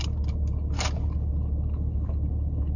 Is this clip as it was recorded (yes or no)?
yes